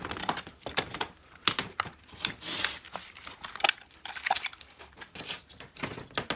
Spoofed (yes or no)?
no